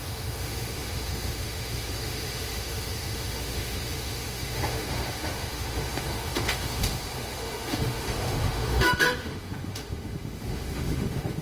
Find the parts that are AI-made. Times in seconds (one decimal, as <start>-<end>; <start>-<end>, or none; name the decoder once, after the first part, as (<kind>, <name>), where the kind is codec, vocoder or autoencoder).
0.0-11.4 (autoencoder, DAC-VAE)